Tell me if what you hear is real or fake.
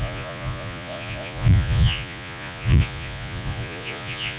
fake